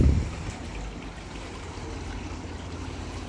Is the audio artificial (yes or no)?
no